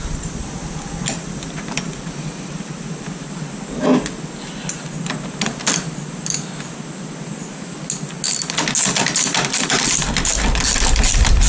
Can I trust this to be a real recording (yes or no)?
yes